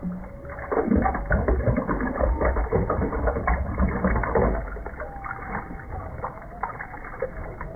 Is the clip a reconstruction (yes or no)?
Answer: no